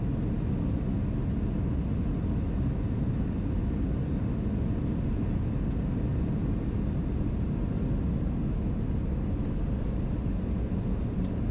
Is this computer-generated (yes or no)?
no